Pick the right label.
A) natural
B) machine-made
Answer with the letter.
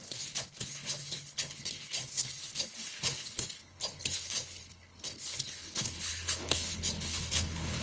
B